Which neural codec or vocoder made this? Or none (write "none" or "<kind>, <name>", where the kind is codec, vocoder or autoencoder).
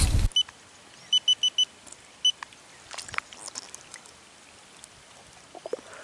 none